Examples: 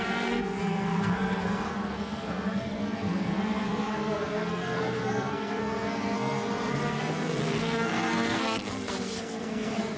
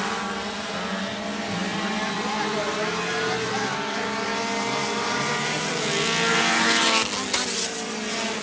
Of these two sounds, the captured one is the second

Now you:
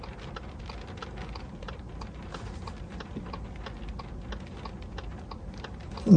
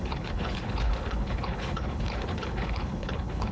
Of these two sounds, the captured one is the first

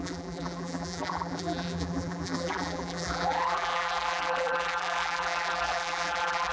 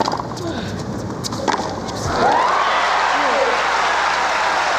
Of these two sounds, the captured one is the second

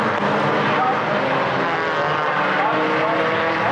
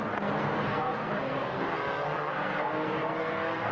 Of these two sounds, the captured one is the first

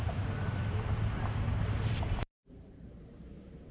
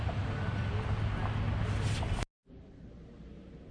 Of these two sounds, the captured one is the second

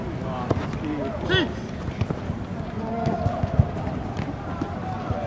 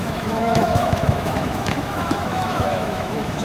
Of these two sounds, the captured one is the first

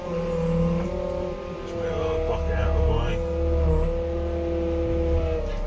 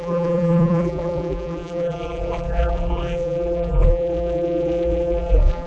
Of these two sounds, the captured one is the first